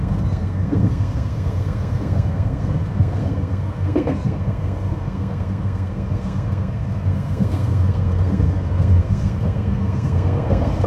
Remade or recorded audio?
remade